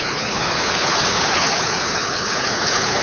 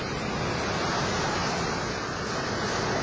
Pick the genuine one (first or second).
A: second